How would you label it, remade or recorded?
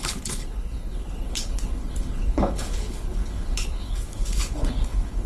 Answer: remade